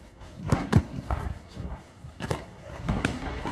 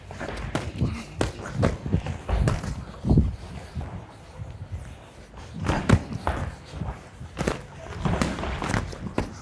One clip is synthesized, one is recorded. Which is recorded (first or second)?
second